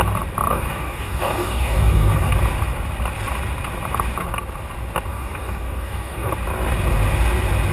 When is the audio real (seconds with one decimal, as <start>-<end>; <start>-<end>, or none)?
0.0-0.5; 2.3-5.1; 6.3-7.7

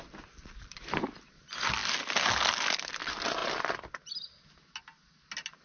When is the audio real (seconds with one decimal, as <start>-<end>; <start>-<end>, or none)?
0.0-5.6